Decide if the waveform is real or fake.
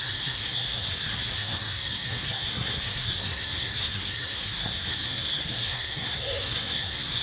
fake